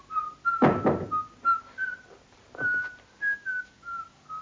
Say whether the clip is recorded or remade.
recorded